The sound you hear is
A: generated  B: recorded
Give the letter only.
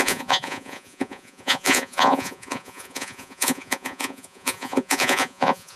A